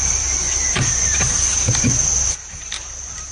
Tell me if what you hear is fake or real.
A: real